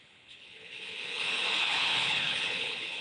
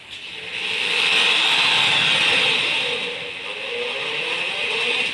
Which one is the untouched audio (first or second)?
second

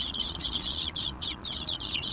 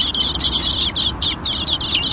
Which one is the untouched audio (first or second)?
second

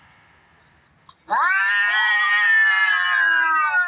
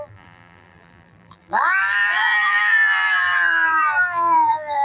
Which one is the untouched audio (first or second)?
first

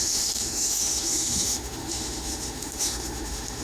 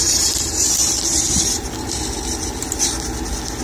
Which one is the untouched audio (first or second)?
second